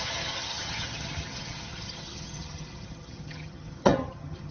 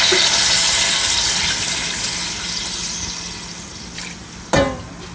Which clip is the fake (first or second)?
first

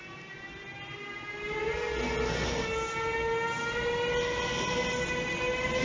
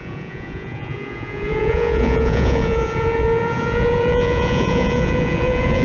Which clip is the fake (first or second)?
second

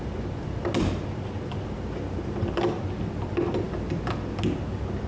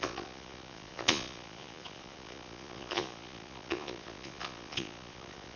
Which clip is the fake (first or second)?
second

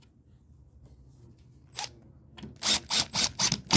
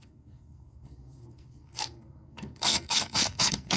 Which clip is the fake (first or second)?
second